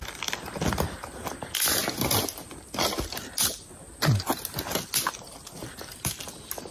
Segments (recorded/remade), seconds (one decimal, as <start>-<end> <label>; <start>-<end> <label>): 0.0-6.7 recorded